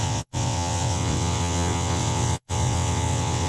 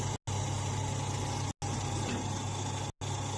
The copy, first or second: first